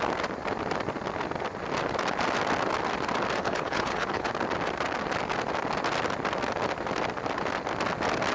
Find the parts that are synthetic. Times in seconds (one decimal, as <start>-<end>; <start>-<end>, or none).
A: 3.4-4.3